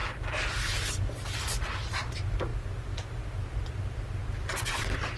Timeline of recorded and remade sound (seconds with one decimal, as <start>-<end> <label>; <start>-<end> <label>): 0.0-5.2 recorded